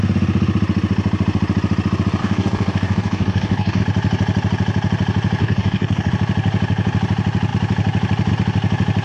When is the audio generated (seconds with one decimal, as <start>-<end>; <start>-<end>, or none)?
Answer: 2.2-3.8; 5.4-6.1